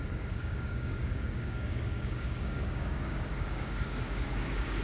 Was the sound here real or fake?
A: fake